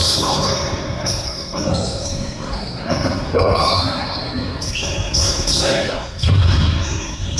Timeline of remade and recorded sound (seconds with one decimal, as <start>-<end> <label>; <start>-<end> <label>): 0.0-7.4 remade